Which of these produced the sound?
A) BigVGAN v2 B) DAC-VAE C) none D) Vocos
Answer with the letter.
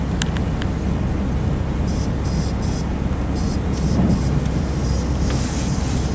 C